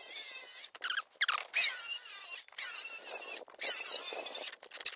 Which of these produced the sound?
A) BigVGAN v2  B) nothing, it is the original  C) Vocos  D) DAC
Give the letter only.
B